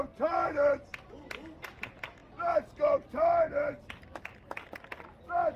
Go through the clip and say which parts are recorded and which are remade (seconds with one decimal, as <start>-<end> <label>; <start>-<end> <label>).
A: 0.0-5.6 recorded